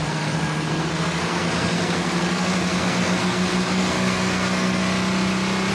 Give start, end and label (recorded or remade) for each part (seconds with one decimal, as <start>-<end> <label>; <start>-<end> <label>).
0.0-4.8 remade; 4.8-5.7 recorded